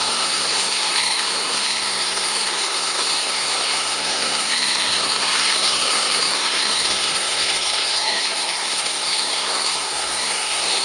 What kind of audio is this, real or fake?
fake